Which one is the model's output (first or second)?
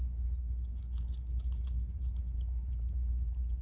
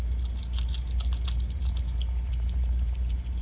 first